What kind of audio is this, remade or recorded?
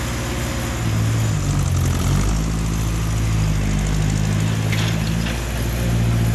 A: recorded